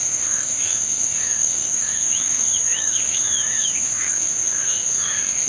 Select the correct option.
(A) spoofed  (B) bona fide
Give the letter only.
A